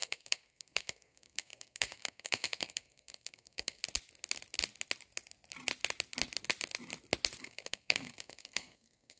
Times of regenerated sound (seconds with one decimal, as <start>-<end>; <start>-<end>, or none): 0.0-3.8; 7.4-9.2